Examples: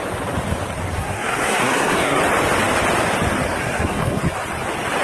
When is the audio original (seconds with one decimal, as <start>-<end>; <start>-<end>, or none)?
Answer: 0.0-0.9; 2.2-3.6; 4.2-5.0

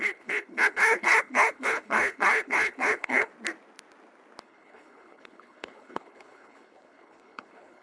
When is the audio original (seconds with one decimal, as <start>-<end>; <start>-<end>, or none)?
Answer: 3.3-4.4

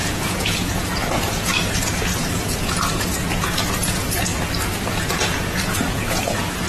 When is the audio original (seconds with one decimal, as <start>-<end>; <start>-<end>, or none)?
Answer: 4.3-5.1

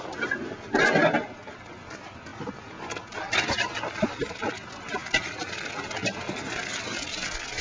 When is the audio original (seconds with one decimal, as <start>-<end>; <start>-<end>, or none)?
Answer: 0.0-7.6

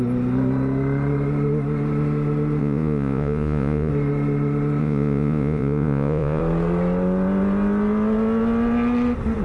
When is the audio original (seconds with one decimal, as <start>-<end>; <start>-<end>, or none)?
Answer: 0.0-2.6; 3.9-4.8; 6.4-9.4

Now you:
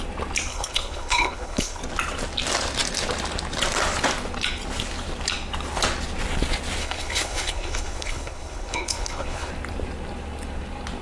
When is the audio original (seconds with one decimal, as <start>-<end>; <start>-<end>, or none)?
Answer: 0.0-0.5; 1.8-6.8; 9.5-11.0

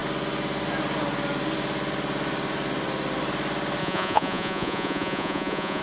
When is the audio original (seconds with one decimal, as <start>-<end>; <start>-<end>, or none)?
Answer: 0.0-3.8